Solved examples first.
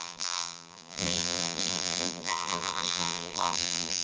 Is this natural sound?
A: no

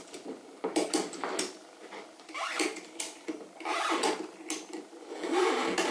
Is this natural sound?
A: yes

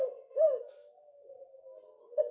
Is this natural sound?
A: no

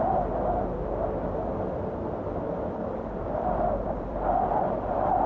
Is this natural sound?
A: no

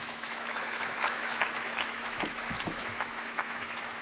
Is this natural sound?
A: no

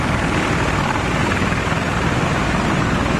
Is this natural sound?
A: yes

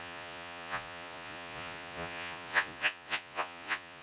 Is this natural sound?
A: no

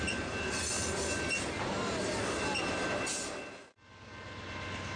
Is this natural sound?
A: yes